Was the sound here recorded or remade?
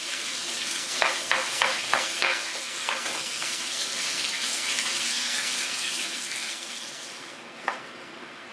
remade